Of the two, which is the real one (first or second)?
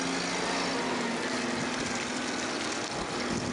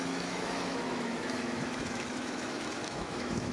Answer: first